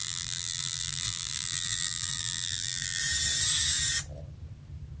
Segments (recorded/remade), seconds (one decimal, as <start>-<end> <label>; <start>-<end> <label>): 0.0-3.0 remade; 3.0-5.0 recorded